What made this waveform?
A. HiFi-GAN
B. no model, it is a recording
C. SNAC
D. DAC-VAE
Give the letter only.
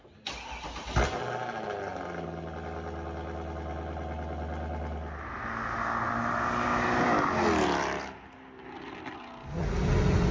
B